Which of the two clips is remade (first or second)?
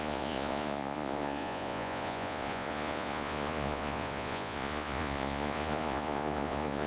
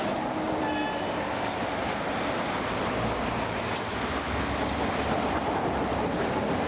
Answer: first